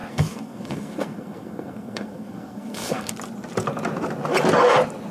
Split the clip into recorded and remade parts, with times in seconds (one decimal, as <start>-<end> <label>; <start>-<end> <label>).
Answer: 0.0-3.1 remade; 3.1-5.1 recorded